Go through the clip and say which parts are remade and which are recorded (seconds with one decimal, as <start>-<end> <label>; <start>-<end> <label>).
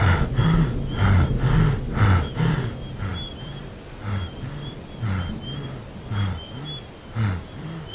0.0-7.9 recorded